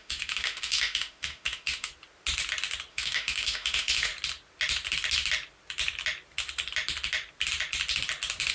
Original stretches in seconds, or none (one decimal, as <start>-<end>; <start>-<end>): 1.9-2.9; 4.1-8.5